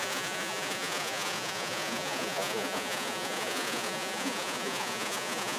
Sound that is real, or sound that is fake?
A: fake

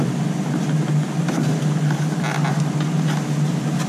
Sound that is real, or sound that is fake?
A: real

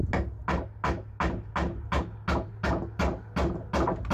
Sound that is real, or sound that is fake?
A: real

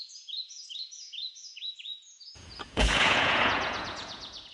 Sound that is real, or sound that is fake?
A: fake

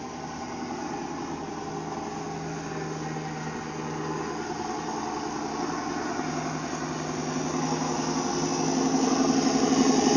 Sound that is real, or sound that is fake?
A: real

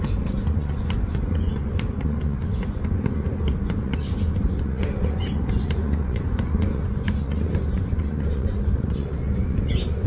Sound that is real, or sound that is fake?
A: fake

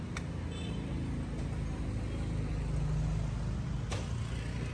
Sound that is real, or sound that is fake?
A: real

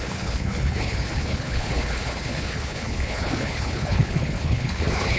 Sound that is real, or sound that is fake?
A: fake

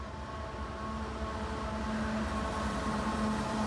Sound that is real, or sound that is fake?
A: real